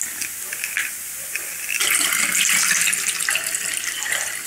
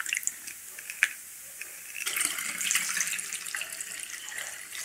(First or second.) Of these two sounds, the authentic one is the first